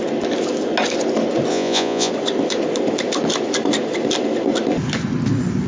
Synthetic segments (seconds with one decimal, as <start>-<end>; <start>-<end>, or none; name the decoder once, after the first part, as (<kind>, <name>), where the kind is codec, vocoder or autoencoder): 1.5-2.1 (vocoder, Vocos)